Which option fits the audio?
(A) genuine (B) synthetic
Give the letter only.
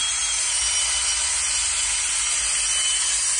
A